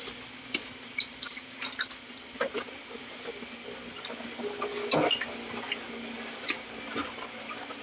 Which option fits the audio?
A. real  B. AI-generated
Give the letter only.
A